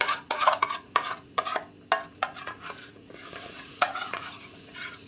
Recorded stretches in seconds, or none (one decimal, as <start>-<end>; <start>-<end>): 1.5-2.1